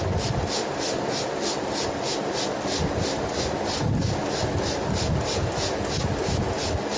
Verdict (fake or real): real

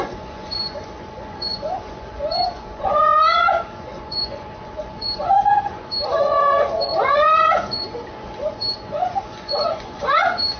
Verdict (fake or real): fake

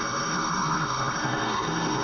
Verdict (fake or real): fake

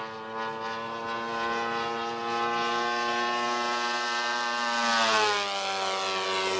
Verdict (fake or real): real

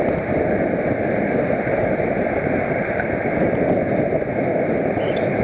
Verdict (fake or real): real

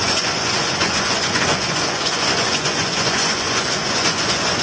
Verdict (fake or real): fake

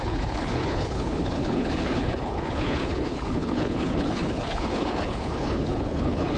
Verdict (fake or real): fake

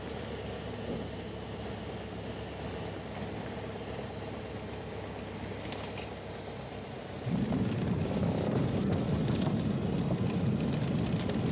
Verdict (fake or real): real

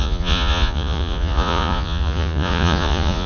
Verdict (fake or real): fake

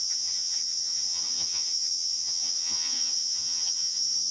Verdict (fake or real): fake